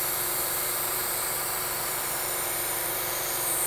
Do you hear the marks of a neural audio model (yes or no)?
yes